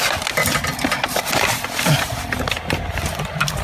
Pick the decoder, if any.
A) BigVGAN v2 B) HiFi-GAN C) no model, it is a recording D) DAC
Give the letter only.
C